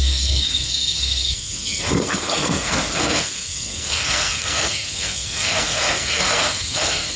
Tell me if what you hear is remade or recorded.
remade